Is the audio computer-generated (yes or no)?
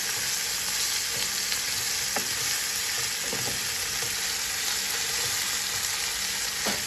no